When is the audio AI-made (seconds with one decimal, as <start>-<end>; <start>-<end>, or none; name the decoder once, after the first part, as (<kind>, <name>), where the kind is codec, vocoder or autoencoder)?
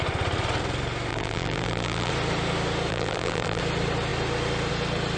1.1-2.1 (vocoder, BigVGAN v2); 2.9-3.6